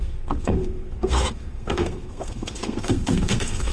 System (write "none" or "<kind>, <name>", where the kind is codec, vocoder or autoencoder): codec, SNAC